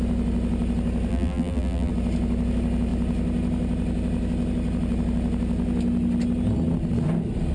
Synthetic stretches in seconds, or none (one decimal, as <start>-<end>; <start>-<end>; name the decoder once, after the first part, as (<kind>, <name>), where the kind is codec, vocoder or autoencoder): 1.1-1.9 (vocoder, BigVGAN v2)